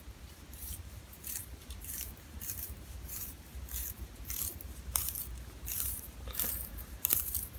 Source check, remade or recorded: remade